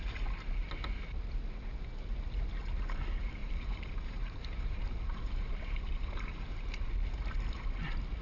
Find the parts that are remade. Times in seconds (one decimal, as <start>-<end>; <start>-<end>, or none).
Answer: 3.4-6.9

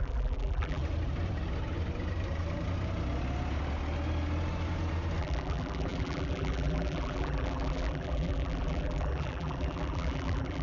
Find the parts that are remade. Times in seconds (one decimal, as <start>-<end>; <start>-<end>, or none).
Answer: 0.0-0.8; 5.2-10.6

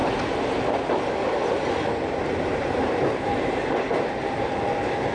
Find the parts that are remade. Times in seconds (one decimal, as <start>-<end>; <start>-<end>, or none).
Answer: 0.0-0.6; 1.4-4.5